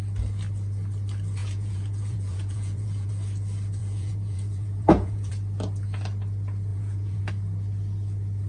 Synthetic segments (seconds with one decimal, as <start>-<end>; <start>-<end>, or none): 1.4-3.1; 3.8-5.3; 6.7-7.2